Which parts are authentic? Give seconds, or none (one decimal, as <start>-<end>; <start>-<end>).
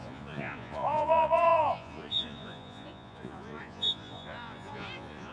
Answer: none